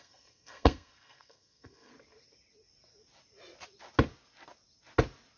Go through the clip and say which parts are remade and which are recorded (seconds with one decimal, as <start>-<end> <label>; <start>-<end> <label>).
0.0-1.9 remade; 1.9-5.4 recorded